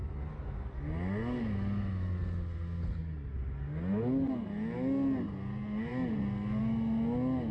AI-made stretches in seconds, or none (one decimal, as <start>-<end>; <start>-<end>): none